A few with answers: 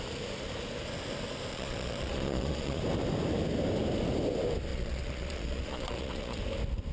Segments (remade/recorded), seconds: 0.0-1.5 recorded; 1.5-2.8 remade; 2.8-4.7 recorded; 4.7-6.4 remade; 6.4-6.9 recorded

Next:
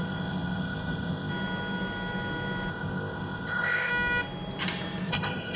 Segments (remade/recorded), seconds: 0.0-1.3 remade; 1.3-2.7 recorded; 2.7-3.9 remade; 3.9-5.1 recorded; 5.1-5.6 remade

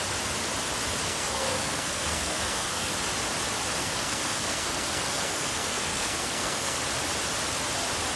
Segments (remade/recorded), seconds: 0.0-1.0 recorded; 1.0-3.0 remade; 3.0-3.8 recorded; 3.8-6.8 remade; 6.8-8.2 recorded

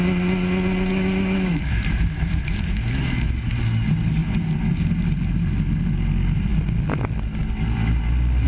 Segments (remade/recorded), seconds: 0.0-0.9 recorded; 0.9-3.5 remade; 3.5-8.5 recorded

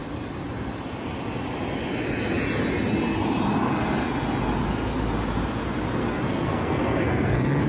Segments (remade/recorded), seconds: 0.0-6.0 recorded; 6.0-7.7 remade

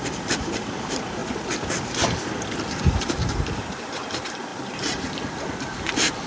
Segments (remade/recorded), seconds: 0.0-1.2 remade; 1.2-2.8 recorded; 2.8-6.3 remade